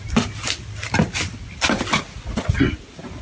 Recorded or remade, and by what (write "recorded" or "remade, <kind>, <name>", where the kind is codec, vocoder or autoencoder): recorded